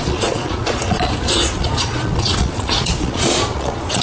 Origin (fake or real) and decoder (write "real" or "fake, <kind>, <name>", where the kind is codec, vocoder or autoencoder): fake, vocoder, Vocos